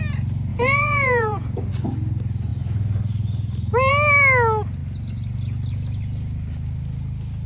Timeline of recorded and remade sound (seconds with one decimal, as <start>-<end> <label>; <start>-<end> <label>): 0.0-0.5 recorded; 0.5-1.7 remade; 1.7-7.5 recorded